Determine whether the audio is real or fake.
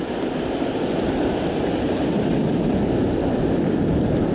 real